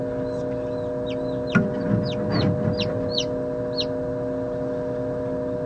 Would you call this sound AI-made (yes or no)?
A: no